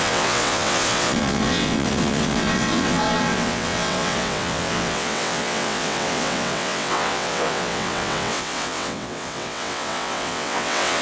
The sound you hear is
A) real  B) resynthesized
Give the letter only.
B